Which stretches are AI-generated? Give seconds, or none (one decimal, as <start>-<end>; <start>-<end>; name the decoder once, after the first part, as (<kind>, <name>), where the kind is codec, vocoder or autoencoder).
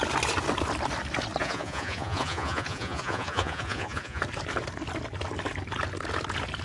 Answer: 1.4-4.2 (vocoder, Vocos)